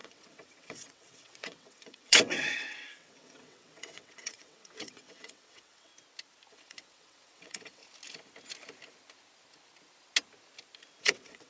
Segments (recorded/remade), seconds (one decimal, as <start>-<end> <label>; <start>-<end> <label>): 0.0-5.9 remade; 5.9-6.5 recorded; 6.5-7.8 remade; 7.8-11.0 recorded; 11.0-11.5 remade